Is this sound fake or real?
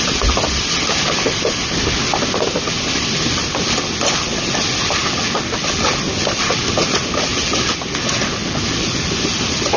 real